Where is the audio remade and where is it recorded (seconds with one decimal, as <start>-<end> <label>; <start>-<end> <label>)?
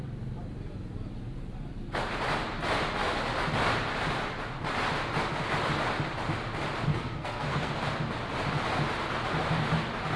0.0-6.9 recorded; 6.9-7.7 remade; 7.7-10.2 recorded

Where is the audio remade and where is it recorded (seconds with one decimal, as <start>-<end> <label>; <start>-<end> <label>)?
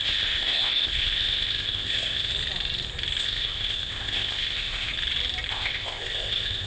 0.0-2.3 remade; 2.3-3.2 recorded; 3.2-4.9 remade; 4.9-5.5 recorded; 5.5-6.7 remade